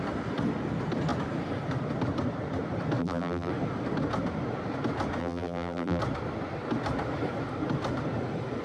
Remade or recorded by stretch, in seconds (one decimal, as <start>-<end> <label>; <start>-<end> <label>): 0.0-3.0 recorded; 3.0-3.5 remade; 3.5-5.2 recorded; 5.2-6.0 remade; 6.0-8.6 recorded